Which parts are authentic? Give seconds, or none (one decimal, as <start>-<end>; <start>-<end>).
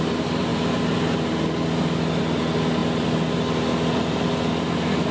0.0-5.1